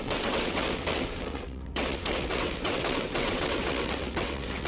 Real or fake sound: fake